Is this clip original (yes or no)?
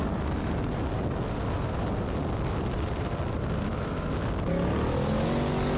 yes